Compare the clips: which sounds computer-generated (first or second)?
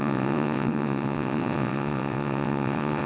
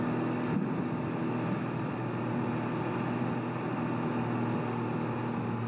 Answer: first